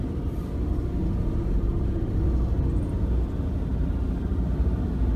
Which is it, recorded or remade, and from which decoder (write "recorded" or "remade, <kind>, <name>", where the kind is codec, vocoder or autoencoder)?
recorded